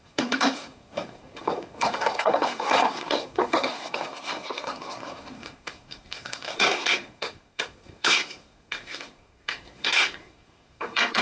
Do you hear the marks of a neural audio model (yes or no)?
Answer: yes